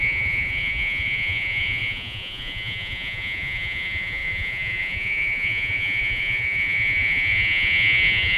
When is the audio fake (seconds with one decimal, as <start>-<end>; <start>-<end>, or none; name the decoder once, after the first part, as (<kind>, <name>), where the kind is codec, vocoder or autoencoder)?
0.0-8.4 (vocoder, Vocos)